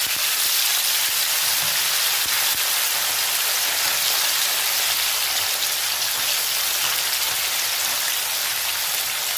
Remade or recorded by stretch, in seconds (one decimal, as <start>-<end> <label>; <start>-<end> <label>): 0.0-9.4 recorded